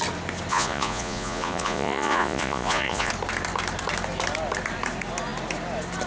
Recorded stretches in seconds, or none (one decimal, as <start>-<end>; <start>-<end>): 0.0-0.5; 3.1-6.1